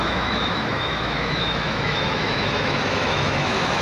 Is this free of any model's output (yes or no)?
no